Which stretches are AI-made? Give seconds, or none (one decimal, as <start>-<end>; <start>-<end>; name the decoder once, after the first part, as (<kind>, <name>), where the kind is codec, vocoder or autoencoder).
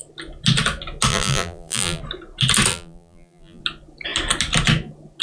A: 1.1-2.0 (vocoder, BigVGAN v2); 2.7-3.6